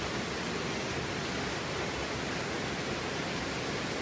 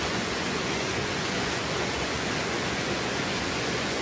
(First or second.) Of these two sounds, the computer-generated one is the second